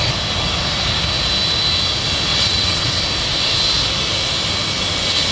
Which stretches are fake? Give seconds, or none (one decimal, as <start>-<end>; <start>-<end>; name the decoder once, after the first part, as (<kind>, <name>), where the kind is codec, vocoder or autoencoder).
2.3-3.0 (vocoder, WaveNeXt)